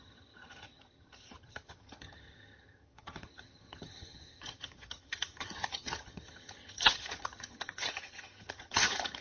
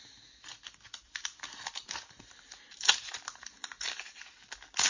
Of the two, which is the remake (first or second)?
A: first